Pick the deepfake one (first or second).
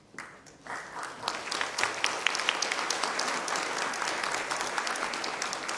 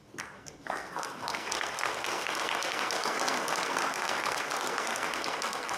second